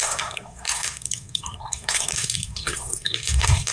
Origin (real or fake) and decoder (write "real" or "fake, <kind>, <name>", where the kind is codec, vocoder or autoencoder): fake, codec, SNAC